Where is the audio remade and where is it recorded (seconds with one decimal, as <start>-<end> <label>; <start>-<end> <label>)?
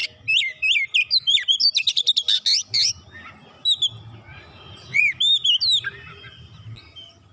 0.0-4.3 recorded; 4.3-5.0 remade; 5.0-7.3 recorded